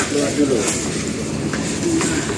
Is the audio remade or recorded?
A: recorded